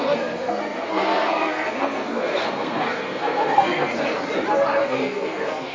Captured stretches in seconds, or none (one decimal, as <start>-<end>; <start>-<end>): 3.9-4.8